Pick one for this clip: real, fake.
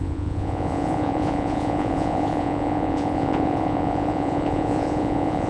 fake